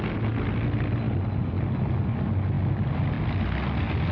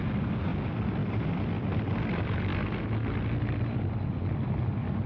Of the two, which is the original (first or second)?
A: first